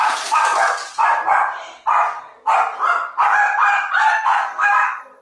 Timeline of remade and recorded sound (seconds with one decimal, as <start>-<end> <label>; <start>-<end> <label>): 0.0-4.0 recorded; 4.0-5.2 remade